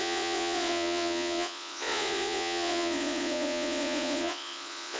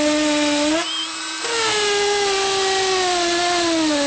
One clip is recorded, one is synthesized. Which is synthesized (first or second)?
first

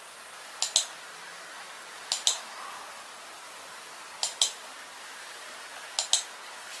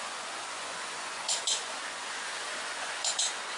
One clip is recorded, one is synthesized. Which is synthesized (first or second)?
second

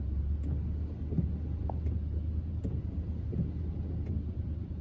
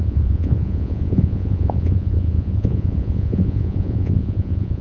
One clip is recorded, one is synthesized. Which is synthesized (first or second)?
second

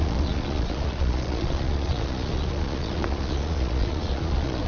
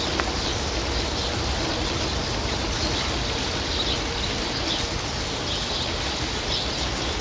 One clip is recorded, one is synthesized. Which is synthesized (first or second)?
first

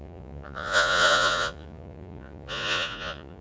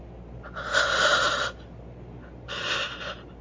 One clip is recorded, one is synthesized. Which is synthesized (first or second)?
first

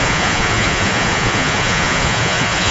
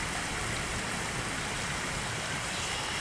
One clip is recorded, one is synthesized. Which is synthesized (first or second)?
first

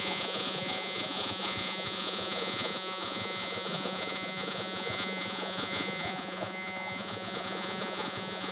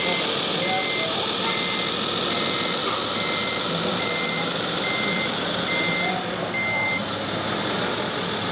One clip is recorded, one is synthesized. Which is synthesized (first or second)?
first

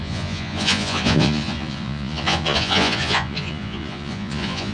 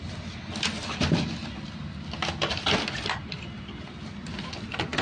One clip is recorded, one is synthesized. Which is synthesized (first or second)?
first